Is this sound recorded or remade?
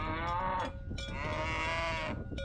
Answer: recorded